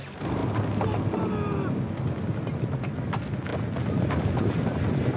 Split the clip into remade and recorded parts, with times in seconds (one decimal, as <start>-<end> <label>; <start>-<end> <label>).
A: 0.0-5.2 recorded